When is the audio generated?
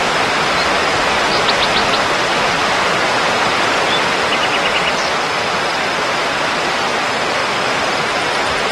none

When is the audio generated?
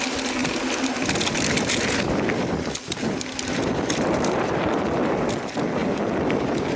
0.4-4.5 (vocoder, BigVGAN v2); 5.8-6.8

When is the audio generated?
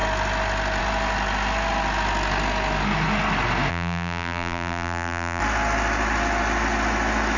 3.7-5.4 (vocoder, BigVGAN v2)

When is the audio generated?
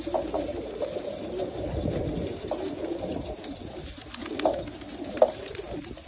none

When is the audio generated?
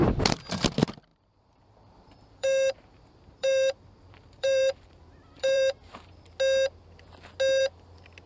1.1-6.1 (vocoder, BigVGAN v2)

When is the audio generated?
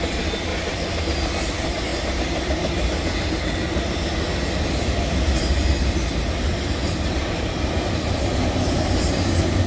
0.5-1.0 (vocoder, BigVGAN v2); 1.9-3.3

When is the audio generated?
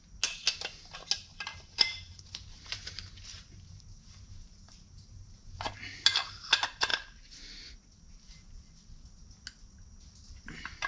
1.5-5.7 (vocoder, BigVGAN v2)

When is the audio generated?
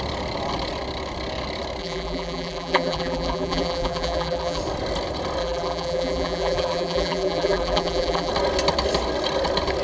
1.8-4.6 (vocoder, BigVGAN v2); 5.4-8.3